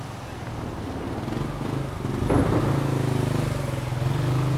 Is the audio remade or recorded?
recorded